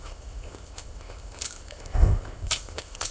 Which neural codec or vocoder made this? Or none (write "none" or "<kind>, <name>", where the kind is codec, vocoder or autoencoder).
codec, ZipCodec